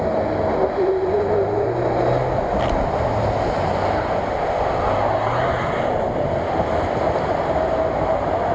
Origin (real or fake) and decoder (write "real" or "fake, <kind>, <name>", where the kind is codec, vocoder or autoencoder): real